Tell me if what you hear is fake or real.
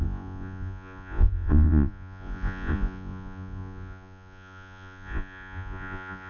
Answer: fake